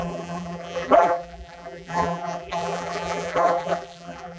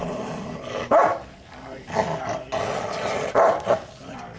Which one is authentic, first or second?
second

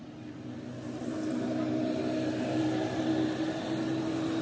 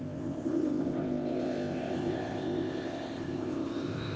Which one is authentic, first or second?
first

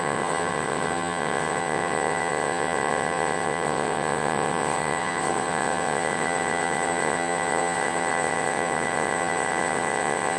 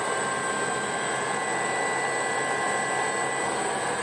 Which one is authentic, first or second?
second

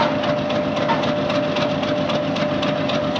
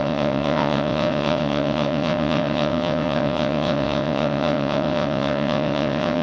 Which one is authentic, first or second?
first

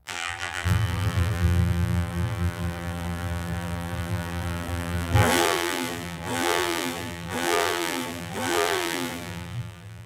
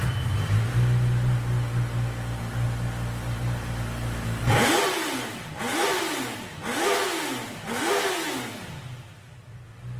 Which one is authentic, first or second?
second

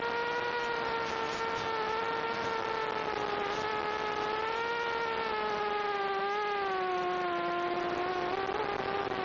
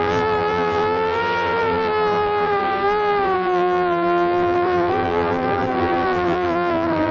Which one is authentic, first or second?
first